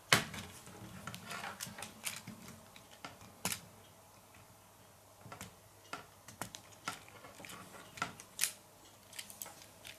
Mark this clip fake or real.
real